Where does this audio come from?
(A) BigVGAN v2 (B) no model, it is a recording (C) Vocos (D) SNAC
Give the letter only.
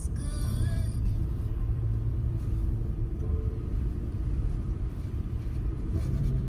A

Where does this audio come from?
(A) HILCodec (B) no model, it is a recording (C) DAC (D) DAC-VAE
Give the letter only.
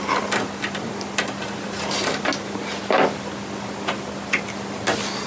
B